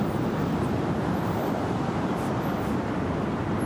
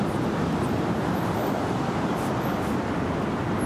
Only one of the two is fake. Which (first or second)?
first